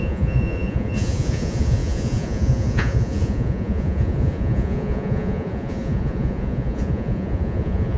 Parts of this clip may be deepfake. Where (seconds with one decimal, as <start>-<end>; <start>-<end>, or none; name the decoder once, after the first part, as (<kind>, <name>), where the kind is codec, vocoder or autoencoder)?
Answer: 0.0-8.0 (vocoder, Vocos)